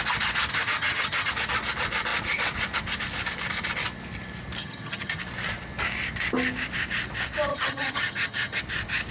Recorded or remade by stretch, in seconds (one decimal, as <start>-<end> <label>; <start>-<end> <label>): 0.0-0.5 recorded; 0.5-1.3 remade; 1.3-4.6 recorded; 4.6-5.2 remade; 5.2-7.5 recorded; 7.5-8.6 remade; 8.6-9.1 recorded